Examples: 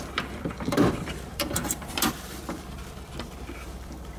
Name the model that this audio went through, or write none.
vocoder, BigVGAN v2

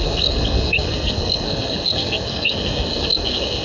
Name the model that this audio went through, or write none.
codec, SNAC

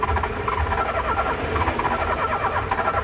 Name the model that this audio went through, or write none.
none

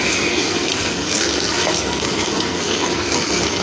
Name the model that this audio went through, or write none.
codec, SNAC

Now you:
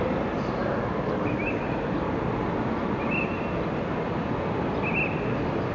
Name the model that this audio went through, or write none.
none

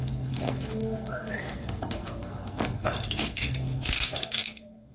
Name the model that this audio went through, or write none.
codec, SNAC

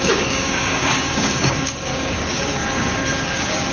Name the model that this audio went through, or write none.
codec, DAC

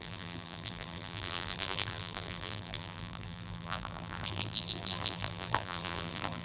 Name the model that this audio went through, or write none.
vocoder, BigVGAN v2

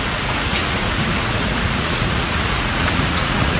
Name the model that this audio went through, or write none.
vocoder, Vocos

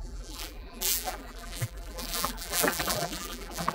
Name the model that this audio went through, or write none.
vocoder, BigVGAN v2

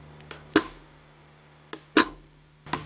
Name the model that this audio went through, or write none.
none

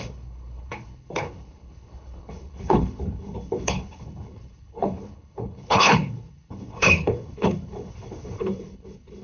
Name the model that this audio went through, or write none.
codec, HILCodec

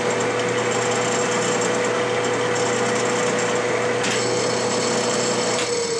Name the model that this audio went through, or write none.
none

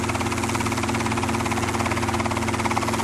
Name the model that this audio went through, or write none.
none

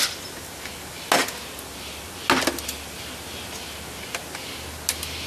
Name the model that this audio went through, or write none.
none